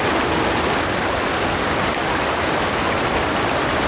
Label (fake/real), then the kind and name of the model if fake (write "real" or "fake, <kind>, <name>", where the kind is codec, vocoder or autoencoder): real